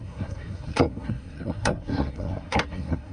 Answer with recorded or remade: remade